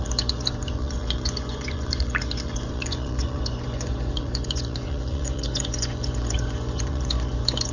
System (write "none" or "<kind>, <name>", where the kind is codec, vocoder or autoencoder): vocoder, Vocos